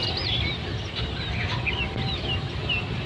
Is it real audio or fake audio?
real